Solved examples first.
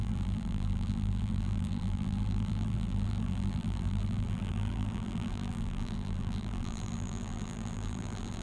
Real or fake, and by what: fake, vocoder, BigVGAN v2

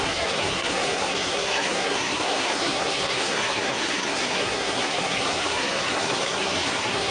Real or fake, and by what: fake, codec, SNAC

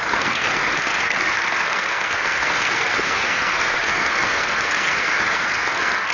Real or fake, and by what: fake, codec, SNAC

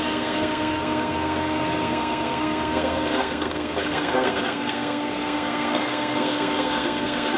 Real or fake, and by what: fake, codec, SNAC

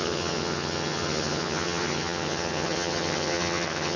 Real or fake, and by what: fake, vocoder, HiFi-GAN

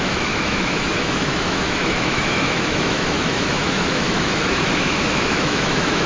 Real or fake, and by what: fake, autoencoder, DAC-VAE